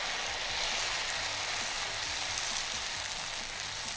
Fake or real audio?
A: real